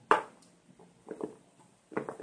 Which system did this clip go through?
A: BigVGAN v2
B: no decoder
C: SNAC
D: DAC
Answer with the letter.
B